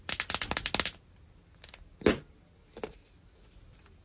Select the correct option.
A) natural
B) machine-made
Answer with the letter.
A